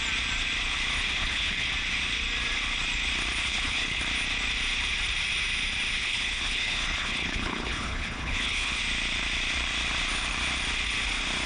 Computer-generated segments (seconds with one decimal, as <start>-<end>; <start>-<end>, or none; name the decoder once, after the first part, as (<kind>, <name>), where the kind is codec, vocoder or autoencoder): 1.2-1.7 (codec, HILCodec); 3.4-4.0; 6.0-8.8